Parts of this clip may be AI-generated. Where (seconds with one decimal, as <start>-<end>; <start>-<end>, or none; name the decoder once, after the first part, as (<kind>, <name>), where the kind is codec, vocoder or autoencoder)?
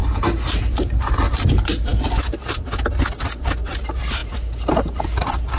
0.0-1.5 (vocoder, BigVGAN v2)